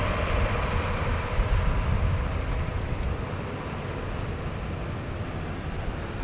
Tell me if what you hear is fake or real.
real